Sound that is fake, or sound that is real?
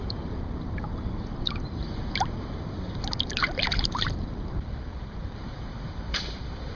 fake